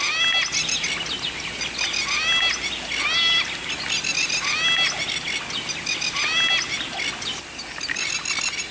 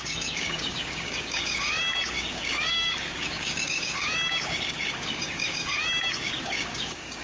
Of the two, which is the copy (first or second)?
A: second